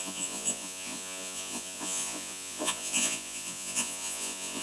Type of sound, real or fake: fake